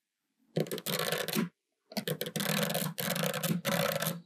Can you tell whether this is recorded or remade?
recorded